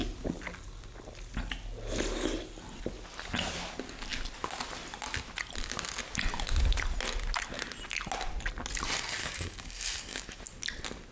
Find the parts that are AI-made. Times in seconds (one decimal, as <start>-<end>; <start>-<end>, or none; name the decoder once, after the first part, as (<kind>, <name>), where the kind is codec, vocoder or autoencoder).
9.2-10.4 (codec, DAC)